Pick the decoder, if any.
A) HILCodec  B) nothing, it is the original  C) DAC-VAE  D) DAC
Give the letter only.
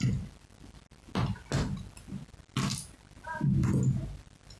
B